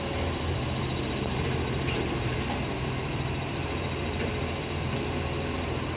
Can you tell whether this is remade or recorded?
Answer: remade